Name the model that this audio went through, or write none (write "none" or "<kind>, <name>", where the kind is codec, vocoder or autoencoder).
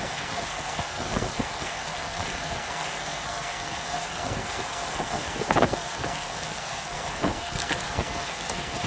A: codec, SNAC